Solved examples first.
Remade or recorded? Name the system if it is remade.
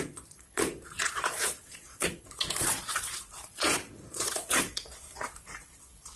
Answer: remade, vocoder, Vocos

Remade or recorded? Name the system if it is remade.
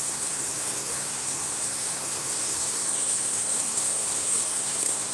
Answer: remade, codec, SNAC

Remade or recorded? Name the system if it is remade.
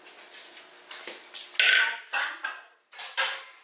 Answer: recorded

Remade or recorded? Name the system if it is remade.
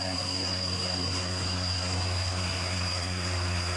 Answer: remade, codec, SNAC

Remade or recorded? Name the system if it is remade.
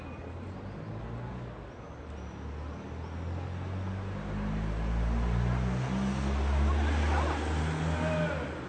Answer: recorded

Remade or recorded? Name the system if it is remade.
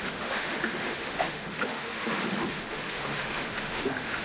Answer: remade, autoencoder, DAC-VAE